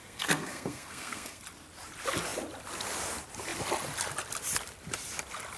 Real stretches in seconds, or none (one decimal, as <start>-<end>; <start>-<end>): 1.4-5.6